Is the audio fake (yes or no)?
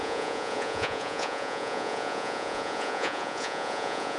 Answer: yes